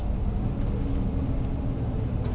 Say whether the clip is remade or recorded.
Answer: recorded